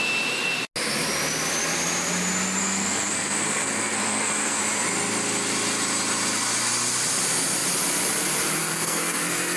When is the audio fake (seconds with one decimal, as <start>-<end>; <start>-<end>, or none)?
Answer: 2.6-4.6; 8.6-9.6